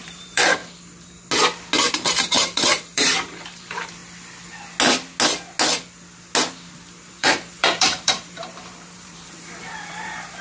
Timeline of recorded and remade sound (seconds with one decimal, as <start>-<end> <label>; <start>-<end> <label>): 0.0-0.6 remade; 0.6-1.9 recorded; 1.9-4.0 remade; 4.0-7.1 recorded; 7.1-10.4 remade